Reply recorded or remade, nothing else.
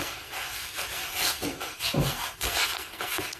remade